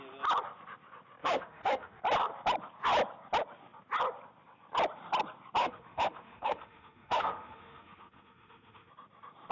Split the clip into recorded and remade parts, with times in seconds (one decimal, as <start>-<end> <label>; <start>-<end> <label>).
0.0-1.2 recorded; 1.2-2.0 remade; 2.0-5.6 recorded; 5.6-8.9 remade; 8.9-9.5 recorded